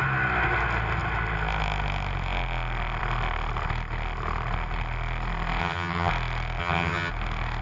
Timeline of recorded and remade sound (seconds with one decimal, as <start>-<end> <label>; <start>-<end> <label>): 0.0-5.6 recorded; 5.6-6.1 remade; 6.1-6.6 recorded; 6.6-7.1 remade; 7.1-7.6 recorded